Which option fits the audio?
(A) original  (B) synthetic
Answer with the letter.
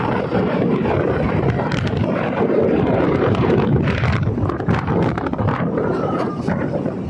B